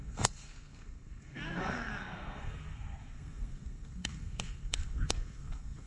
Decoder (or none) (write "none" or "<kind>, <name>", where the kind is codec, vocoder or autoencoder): codec, SNAC